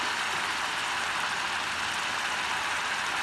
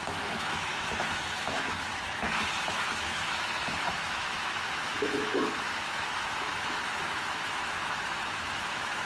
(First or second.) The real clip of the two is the first